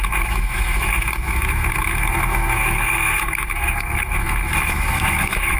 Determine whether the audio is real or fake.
fake